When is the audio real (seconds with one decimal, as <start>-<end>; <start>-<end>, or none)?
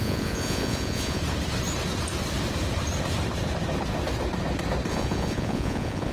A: 1.2-4.9